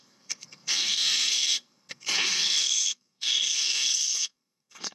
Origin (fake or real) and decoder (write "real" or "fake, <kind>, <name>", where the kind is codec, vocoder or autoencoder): fake, codec, SNAC